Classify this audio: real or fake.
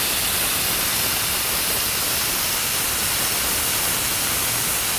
real